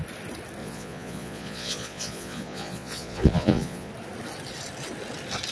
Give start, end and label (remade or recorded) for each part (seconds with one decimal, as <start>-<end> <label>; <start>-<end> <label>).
0.0-0.6 recorded; 0.6-3.9 remade; 3.9-5.5 recorded